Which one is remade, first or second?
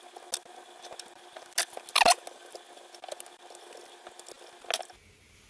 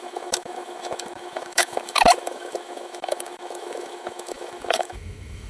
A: second